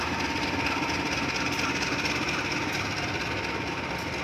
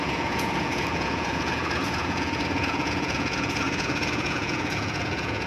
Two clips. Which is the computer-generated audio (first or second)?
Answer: second